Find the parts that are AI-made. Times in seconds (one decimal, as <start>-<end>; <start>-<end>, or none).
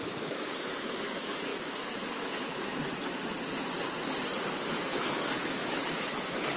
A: 0.0-2.7; 4.7-6.6